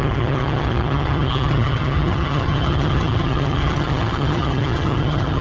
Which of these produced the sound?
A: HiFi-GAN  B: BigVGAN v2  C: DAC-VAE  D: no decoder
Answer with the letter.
A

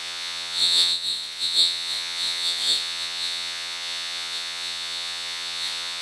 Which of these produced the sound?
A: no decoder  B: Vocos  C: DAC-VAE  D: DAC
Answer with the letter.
B